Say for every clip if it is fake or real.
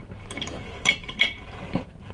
fake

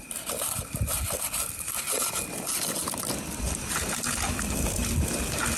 real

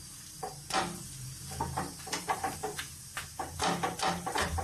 fake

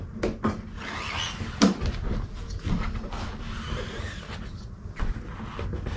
real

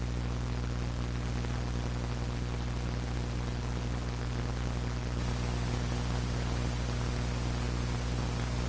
real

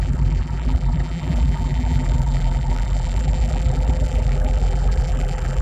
fake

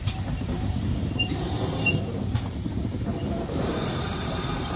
fake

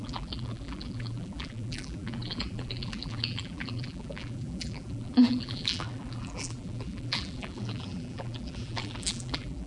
fake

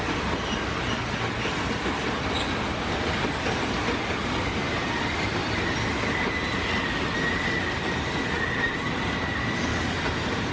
real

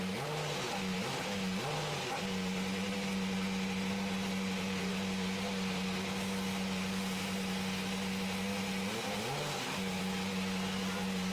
real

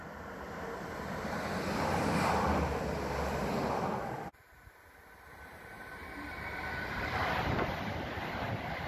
fake